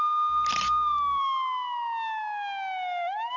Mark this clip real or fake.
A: real